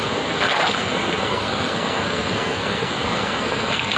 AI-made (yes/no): yes